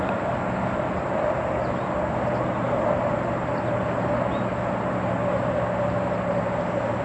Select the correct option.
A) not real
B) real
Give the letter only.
B